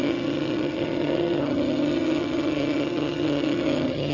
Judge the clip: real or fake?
fake